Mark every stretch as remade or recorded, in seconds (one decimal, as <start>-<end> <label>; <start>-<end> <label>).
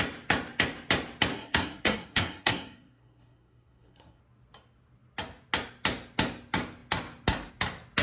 0.0-1.3 recorded; 1.3-4.2 remade; 4.2-8.0 recorded